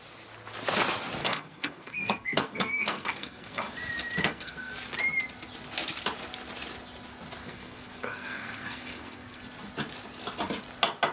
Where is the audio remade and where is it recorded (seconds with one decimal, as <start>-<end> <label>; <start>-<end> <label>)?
0.0-1.2 recorded; 1.2-3.7 remade; 3.7-4.2 recorded; 4.2-4.7 remade; 4.7-7.4 recorded; 7.4-9.4 remade; 9.4-11.1 recorded